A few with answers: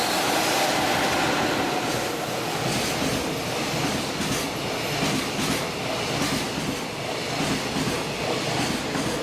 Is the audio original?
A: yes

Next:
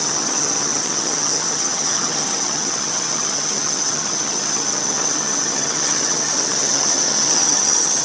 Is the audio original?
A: no